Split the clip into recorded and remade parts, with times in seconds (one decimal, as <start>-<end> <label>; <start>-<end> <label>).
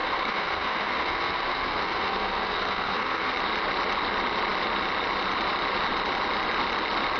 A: 0.0-3.3 remade; 3.3-7.2 recorded